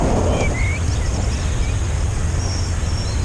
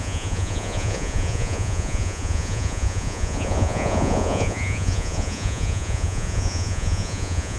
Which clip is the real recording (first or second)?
first